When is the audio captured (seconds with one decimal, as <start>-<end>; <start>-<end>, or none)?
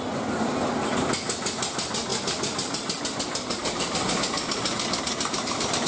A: 0.0-2.1